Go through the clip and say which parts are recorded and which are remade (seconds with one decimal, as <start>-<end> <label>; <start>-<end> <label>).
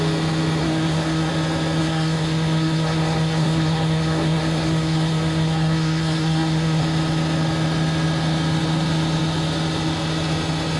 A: 0.0-0.6 recorded; 0.6-1.3 remade; 1.3-1.8 recorded; 1.8-6.8 remade; 6.8-10.8 recorded